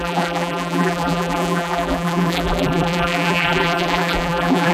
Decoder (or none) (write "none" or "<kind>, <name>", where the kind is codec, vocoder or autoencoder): vocoder, BigVGAN v2